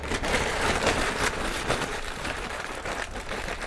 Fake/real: fake